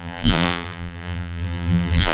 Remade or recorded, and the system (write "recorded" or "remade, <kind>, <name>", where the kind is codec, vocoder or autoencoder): remade, vocoder, BigVGAN v2